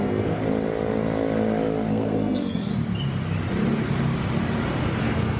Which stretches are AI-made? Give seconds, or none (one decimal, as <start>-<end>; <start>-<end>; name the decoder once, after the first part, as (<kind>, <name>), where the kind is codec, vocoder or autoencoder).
0.0-0.4 (codec, SNAC); 1.9-2.7; 5.0-5.4